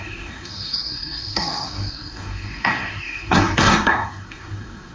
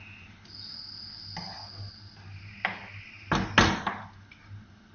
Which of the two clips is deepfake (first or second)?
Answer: first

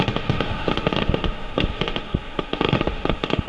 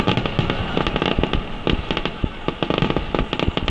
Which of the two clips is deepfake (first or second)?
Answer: first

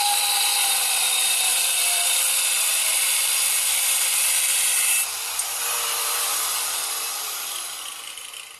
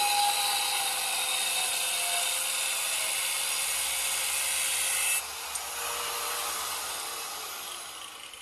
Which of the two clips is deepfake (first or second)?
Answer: first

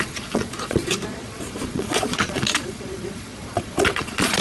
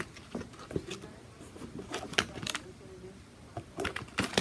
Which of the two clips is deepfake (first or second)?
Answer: first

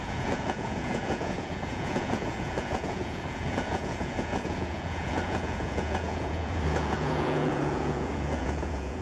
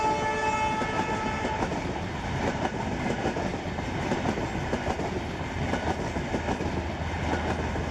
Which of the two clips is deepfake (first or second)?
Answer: first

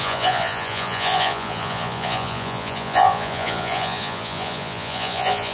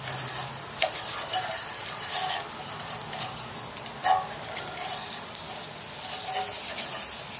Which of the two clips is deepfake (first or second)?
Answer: first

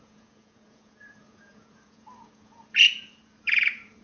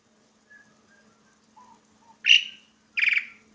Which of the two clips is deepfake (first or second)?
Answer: first